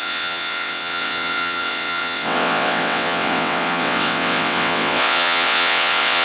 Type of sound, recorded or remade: remade